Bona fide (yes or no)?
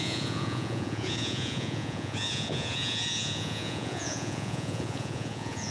no